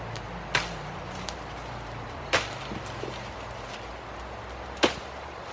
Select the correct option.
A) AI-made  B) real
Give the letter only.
B